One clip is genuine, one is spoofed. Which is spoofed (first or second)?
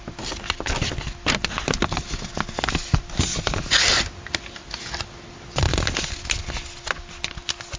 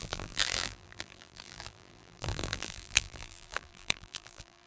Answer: second